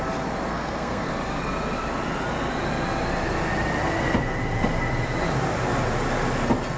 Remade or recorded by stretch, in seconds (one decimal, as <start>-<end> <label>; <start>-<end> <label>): 0.0-0.5 recorded; 0.5-1.1 remade; 1.1-6.8 recorded